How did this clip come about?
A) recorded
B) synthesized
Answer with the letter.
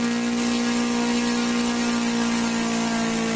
A